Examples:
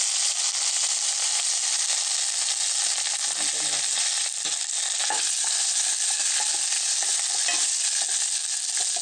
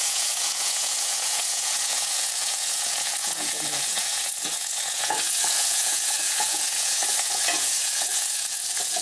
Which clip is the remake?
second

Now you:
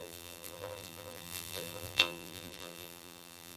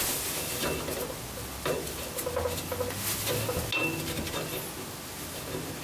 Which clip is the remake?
first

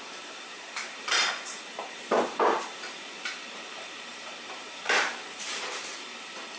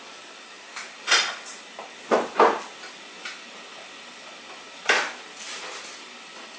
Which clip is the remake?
first